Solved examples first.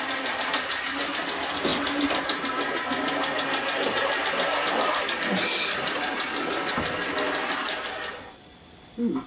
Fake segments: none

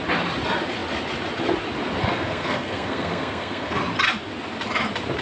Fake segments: 2.0-3.8